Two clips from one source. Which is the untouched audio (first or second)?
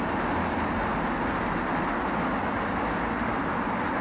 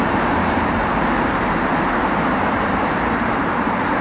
first